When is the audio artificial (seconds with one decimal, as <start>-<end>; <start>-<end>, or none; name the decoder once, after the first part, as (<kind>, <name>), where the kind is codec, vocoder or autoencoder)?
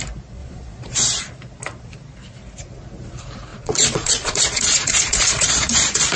0.4-1.2 (vocoder, Vocos); 3.5-6.2